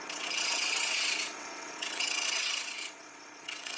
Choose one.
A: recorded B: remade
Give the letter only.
B